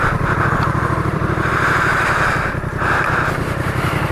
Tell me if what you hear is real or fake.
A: fake